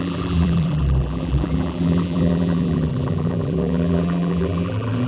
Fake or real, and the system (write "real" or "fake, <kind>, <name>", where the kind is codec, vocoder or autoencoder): fake, vocoder, BigVGAN v2